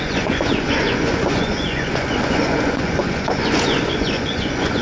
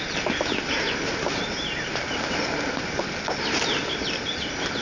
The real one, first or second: second